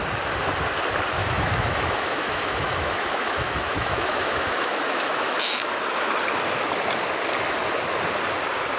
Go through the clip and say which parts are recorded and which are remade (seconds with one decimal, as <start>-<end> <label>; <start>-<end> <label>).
0.0-1.2 recorded; 1.2-6.1 remade; 6.1-8.8 recorded

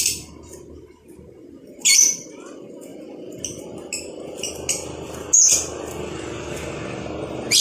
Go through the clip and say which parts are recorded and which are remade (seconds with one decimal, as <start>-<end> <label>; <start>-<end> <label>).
0.0-7.6 recorded

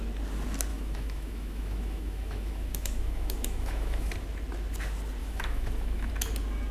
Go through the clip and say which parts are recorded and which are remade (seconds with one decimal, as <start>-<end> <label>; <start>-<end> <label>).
0.0-0.7 recorded; 0.7-4.1 remade; 4.1-5.2 recorded; 5.2-6.1 remade; 6.1-6.7 recorded

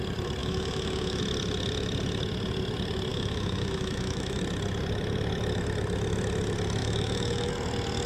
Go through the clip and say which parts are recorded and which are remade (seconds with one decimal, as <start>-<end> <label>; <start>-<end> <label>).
0.0-0.4 recorded; 0.4-1.2 remade; 1.2-3.1 recorded; 3.1-4.4 remade; 4.4-6.8 recorded; 6.8-7.5 remade; 7.5-8.1 recorded

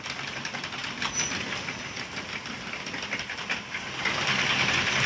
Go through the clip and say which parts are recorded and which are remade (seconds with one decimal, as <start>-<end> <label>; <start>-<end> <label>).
0.0-5.1 recorded